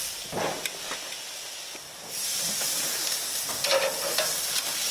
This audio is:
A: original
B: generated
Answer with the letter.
A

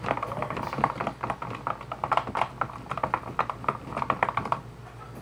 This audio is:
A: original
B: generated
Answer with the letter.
A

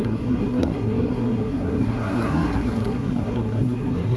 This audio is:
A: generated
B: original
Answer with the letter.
A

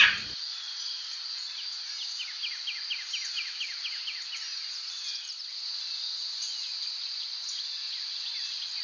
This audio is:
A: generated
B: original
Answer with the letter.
B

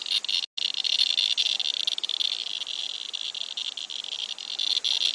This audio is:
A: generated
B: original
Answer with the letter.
B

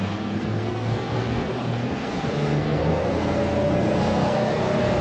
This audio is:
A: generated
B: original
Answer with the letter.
A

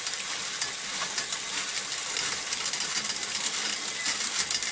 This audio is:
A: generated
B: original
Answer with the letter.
B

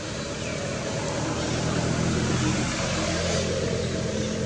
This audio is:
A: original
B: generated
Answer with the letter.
A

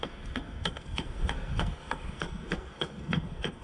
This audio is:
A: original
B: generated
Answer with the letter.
B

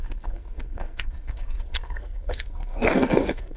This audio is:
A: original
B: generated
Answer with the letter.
B